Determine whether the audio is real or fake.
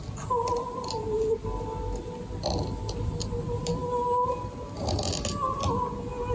real